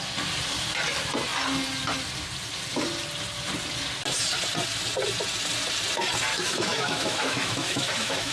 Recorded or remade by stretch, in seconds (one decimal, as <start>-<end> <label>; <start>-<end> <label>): 0.0-6.3 recorded; 6.3-8.3 remade